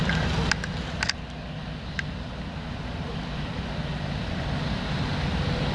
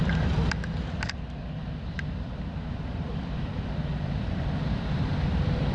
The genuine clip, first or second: first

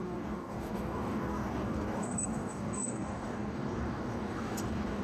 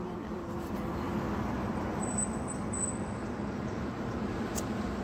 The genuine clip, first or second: second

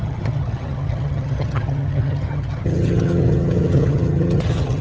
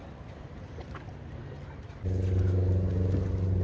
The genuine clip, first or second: second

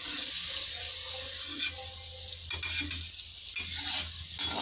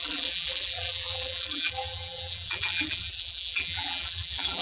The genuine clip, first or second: first